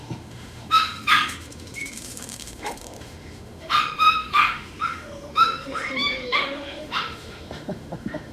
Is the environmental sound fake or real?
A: fake